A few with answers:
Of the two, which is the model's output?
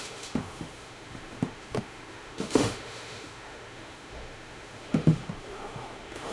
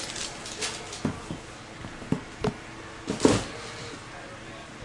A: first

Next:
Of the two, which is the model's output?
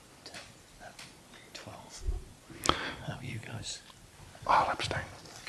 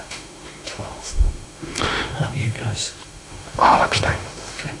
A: second